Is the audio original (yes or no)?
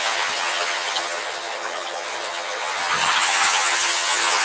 no